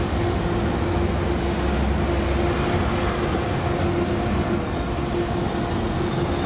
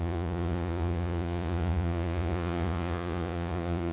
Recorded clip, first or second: first